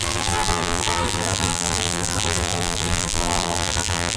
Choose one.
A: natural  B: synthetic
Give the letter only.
B